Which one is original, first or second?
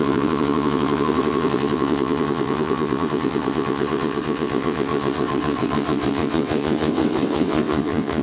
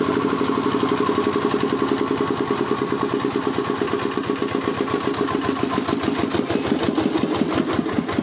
second